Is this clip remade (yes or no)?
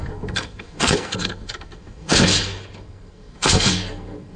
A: yes